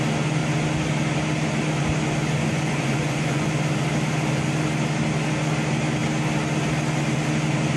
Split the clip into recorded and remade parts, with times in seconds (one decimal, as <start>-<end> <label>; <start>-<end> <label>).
0.0-2.4 recorded; 2.4-3.5 remade; 3.5-7.8 recorded